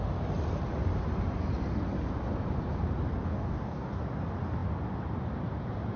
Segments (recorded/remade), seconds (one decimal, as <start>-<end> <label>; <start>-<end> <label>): 0.0-3.2 recorded; 3.2-4.0 remade; 4.0-6.0 recorded